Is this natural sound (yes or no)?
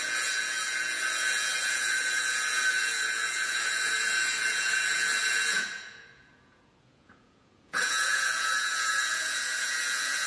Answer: no